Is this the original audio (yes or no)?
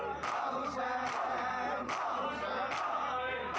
yes